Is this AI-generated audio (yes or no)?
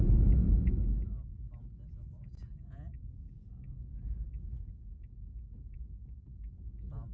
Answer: yes